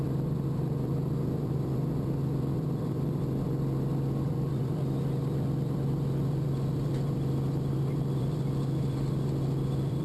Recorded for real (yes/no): no